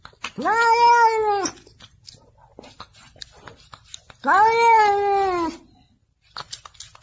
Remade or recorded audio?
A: recorded